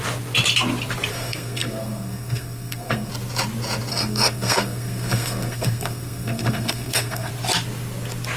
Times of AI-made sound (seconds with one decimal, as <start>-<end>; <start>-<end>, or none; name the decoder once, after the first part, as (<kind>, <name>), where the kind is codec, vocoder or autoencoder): 1.1-3.1 (codec, SNAC); 3.9-7.3